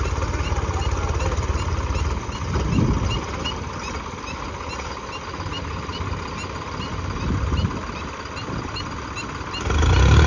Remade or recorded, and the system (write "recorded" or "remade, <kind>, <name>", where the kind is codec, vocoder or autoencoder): recorded